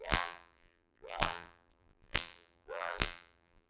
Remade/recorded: remade